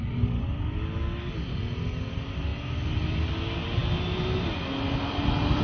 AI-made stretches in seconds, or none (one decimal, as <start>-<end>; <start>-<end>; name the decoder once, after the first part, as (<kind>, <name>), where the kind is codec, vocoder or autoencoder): none